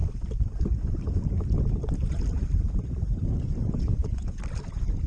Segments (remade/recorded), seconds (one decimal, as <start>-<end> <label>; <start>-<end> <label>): 0.0-3.6 recorded; 3.6-4.4 remade; 4.4-5.1 recorded